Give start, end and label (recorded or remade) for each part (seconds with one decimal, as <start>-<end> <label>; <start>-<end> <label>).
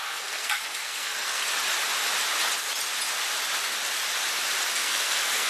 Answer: 0.0-1.4 remade; 1.4-4.7 recorded; 4.7-5.5 remade